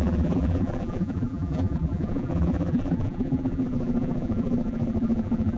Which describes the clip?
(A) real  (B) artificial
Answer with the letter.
B